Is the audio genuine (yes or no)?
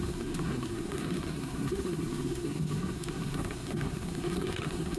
no